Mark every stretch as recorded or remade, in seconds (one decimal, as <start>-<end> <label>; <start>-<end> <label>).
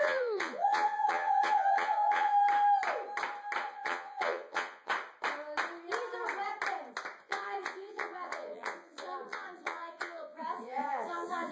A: 0.0-2.3 remade; 2.3-3.6 recorded; 3.6-4.9 remade; 4.9-7.2 recorded; 7.2-11.5 remade